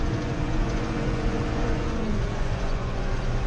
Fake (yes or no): yes